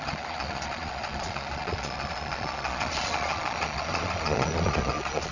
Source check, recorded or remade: remade